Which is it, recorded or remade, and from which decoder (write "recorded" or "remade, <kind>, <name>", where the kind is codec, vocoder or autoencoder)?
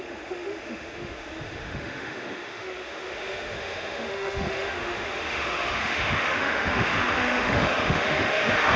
remade, autoencoder, DAC-VAE